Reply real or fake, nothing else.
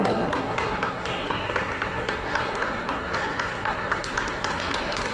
fake